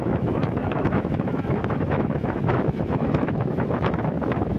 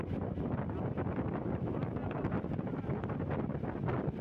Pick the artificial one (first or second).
first